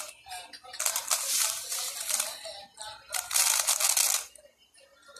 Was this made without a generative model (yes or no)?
yes